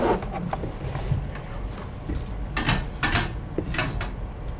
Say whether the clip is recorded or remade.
recorded